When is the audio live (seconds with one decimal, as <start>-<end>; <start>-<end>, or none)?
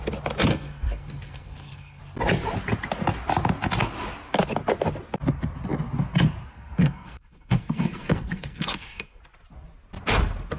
0.0-0.5; 2.0-6.5; 9.2-10.6